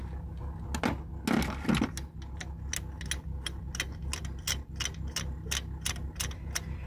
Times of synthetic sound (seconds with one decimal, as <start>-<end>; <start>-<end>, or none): none